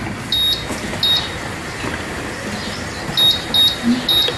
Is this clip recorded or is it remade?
recorded